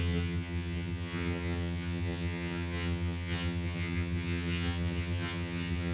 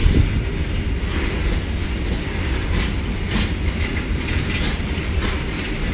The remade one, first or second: first